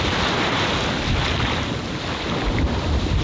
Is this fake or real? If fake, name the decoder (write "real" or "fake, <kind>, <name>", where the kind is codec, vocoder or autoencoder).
real